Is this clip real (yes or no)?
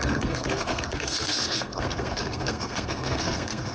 no